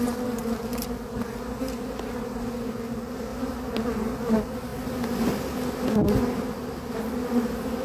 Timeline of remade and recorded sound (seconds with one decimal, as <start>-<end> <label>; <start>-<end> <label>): 0.0-7.8 recorded